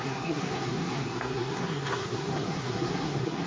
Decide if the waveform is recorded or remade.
remade